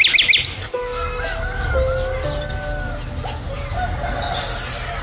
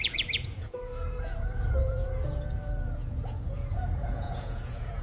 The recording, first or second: first